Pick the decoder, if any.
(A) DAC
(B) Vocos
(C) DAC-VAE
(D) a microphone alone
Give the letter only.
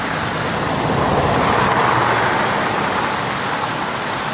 D